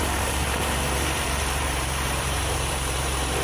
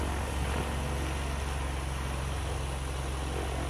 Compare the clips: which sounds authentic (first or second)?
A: second